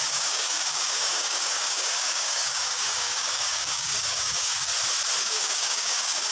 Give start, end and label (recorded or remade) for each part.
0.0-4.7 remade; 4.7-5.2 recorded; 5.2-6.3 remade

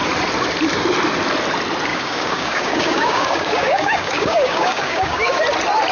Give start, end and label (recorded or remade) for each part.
0.0-1.9 recorded; 1.9-5.4 remade; 5.4-5.9 recorded

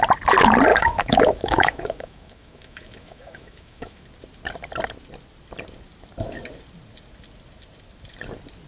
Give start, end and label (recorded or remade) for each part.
0.0-0.7 recorded; 0.7-4.0 remade; 4.0-8.7 recorded

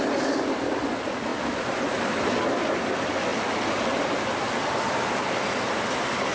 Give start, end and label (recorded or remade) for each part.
0.0-6.3 recorded

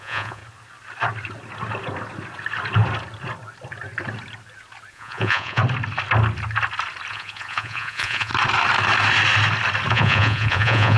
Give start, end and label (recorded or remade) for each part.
0.0-0.4 remade; 0.4-4.9 recorded; 4.9-5.6 remade; 5.6-7.1 recorded; 7.1-8.3 remade; 8.3-9.9 recorded; 9.9-11.0 remade